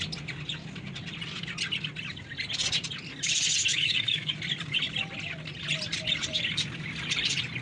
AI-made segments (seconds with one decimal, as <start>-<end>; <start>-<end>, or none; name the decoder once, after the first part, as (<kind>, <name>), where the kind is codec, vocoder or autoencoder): 3.7-4.3 (autoencoder, DAC-VAE)

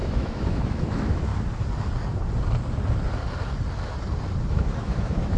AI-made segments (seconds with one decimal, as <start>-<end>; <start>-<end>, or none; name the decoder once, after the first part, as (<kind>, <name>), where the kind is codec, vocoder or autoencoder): 0.0-1.3 (autoencoder, DAC-VAE); 4.5-5.4